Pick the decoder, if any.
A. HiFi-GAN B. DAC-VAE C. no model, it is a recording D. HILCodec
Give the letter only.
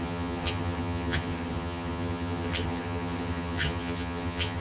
A